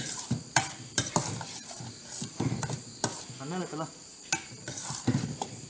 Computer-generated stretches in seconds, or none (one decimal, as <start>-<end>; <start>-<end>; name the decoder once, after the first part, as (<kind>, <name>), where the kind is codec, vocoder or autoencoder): 0.0-2.9 (vocoder, BigVGAN v2); 3.6-4.1; 4.6-5.7